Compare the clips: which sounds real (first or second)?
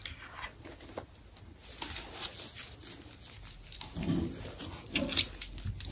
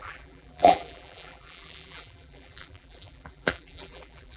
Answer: first